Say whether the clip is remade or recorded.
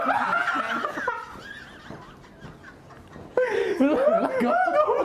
recorded